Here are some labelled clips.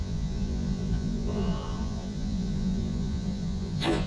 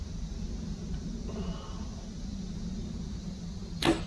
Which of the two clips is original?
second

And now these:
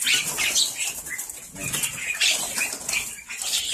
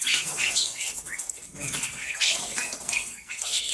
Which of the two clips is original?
first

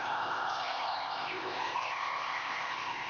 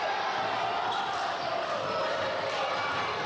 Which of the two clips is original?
second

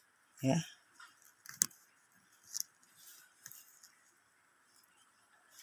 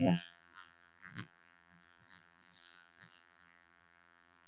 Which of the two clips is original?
first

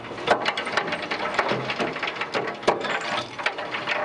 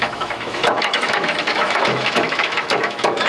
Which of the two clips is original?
first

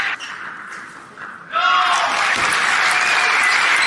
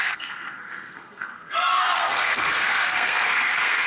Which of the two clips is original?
first